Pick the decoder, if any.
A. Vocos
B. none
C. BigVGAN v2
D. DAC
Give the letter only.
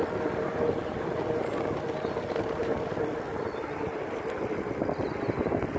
B